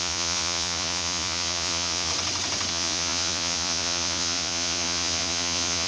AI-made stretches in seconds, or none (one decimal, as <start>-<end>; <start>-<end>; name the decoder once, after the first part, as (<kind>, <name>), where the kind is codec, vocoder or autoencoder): 0.0-2.1 (vocoder, Vocos); 2.7-5.9